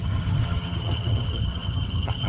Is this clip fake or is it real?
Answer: fake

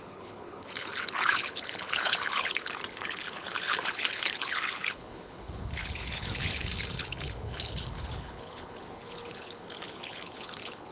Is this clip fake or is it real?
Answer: fake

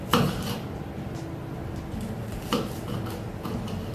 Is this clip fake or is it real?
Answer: real